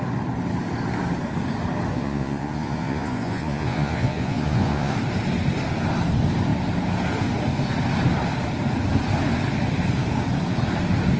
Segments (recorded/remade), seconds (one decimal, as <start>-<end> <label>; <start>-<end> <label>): 0.0-1.9 recorded; 1.9-4.9 remade; 4.9-11.2 recorded